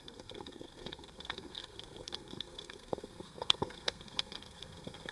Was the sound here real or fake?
fake